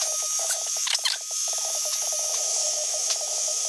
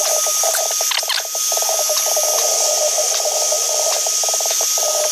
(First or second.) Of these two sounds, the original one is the second